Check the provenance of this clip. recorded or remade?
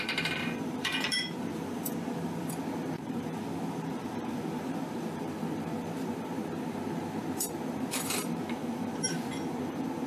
remade